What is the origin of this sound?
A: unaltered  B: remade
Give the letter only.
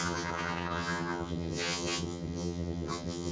B